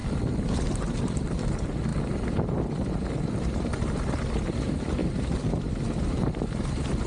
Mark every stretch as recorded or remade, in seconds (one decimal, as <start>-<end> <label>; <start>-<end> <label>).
0.0-1.2 recorded; 1.2-5.0 remade; 5.0-5.9 recorded; 5.9-7.1 remade